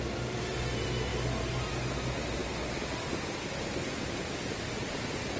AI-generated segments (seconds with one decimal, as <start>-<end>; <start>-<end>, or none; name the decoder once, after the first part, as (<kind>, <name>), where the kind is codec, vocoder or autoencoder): none